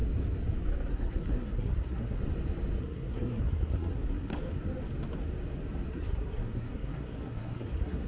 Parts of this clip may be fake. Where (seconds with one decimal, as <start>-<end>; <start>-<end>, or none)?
0.9-2.2; 2.8-4.3; 5.9-8.1